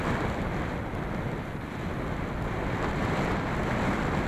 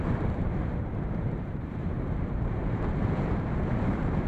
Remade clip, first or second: second